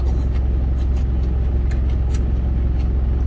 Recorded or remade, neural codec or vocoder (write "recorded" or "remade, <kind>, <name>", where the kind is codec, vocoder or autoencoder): recorded